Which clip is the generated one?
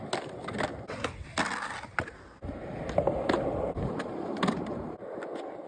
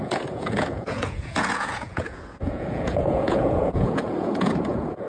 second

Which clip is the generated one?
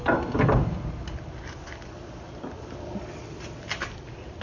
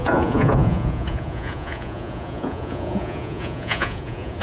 second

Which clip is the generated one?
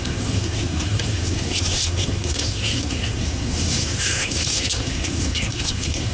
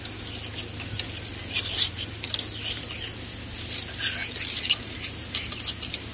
first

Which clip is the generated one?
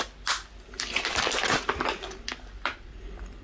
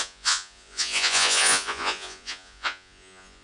second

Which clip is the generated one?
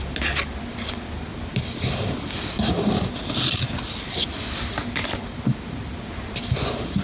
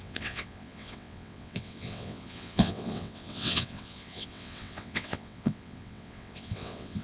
second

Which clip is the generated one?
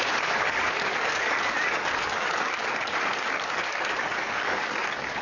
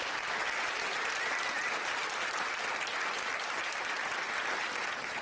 first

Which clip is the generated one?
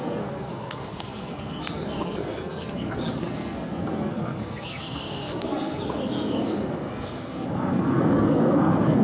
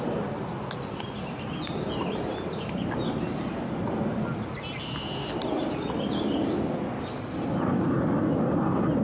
first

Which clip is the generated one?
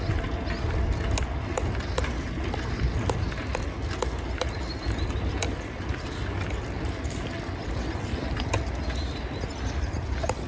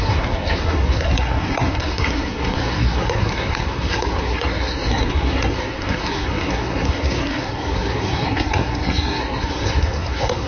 second